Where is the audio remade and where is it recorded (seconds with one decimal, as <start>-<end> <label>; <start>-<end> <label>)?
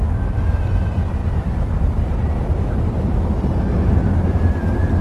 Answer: 0.0-1.2 recorded; 1.2-2.3 remade; 2.3-5.0 recorded